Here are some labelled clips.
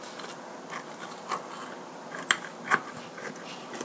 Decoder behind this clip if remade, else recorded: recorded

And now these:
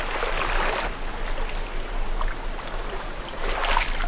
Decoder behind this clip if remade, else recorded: recorded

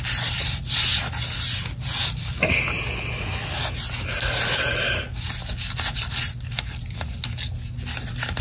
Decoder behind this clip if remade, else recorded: recorded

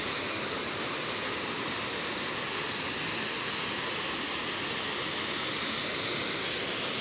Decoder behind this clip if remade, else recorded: recorded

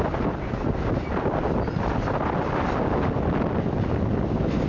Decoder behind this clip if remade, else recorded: recorded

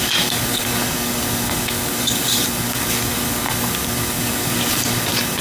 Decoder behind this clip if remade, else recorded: remade, codec, DAC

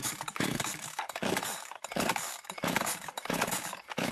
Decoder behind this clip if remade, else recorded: remade, codec, DAC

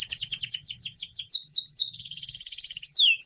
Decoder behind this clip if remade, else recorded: remade, codec, DAC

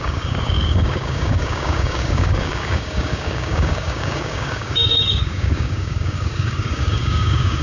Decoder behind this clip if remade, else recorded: remade, codec, DAC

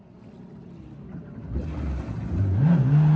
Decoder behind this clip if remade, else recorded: recorded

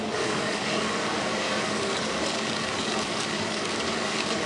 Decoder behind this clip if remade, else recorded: remade, codec, DAC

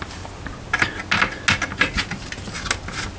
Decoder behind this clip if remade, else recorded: recorded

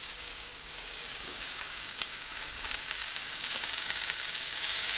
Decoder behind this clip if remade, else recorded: remade, codec, DAC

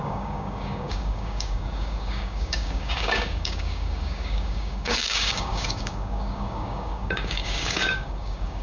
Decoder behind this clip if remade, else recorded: remade, codec, DAC